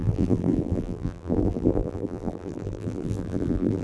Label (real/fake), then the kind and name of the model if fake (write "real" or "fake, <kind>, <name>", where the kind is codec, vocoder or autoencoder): fake, vocoder, BigVGAN v2